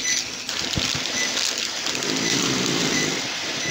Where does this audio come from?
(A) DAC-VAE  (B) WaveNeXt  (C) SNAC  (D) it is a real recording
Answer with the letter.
D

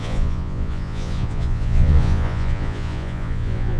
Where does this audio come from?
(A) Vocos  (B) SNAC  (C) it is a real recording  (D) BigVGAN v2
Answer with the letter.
A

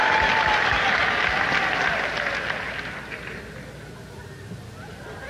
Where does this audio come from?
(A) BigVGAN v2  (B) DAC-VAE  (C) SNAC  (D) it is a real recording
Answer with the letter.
D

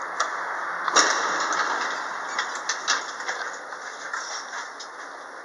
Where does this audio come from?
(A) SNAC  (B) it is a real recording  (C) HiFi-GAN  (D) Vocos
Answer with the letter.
B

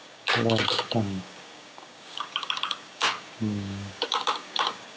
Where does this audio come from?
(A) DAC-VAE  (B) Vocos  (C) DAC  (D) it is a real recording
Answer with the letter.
C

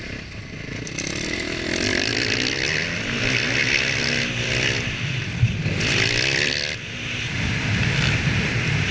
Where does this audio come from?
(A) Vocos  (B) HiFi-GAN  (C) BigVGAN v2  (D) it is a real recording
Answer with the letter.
D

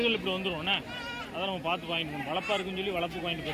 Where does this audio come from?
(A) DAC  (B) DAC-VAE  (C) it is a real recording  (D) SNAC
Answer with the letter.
C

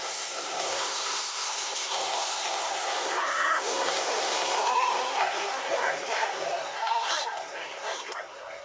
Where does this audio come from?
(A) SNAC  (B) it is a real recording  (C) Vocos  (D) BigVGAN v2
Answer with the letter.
A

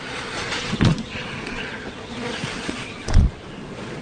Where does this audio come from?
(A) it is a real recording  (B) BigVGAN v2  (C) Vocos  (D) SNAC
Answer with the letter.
C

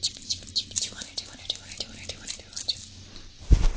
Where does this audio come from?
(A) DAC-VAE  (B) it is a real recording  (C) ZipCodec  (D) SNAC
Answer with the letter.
B